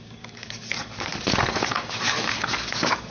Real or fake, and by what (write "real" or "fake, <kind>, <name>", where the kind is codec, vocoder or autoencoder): fake, codec, DAC